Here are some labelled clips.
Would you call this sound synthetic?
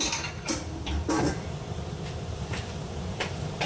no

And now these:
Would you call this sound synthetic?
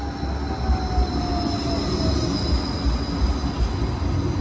no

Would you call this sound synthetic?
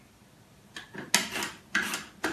no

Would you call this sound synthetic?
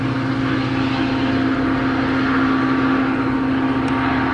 no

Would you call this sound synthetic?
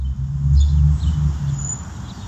no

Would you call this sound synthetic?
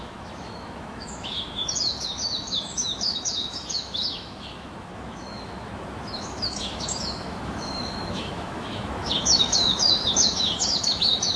yes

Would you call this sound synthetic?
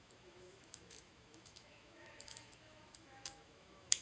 yes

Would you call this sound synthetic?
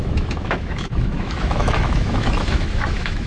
yes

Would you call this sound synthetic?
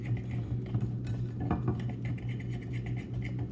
no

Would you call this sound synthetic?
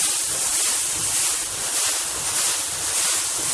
no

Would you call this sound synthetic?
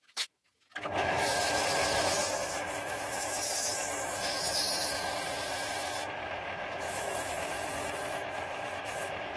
yes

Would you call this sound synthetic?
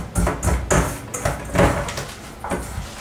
no